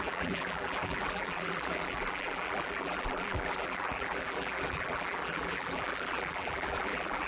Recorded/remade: remade